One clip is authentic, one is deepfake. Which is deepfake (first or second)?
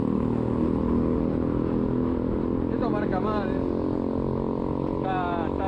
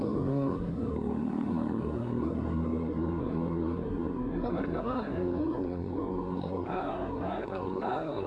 second